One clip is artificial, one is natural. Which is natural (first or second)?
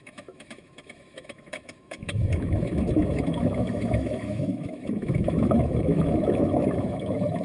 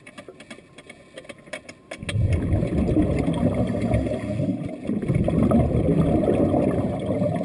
second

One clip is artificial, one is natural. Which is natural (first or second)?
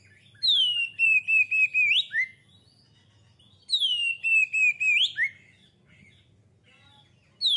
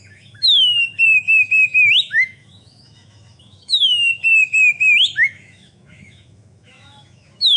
first